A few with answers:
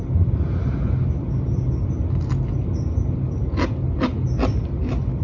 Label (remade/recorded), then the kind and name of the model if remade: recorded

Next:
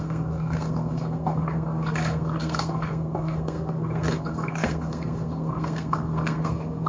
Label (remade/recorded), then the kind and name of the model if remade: remade, codec, SNAC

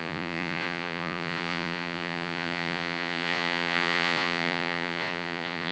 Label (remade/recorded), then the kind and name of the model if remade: remade, vocoder, Vocos